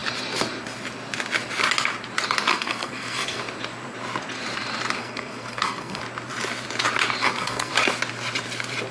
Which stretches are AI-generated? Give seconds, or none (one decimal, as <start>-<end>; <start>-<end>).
2.5-3.4; 5.0-6.0; 7.2-7.7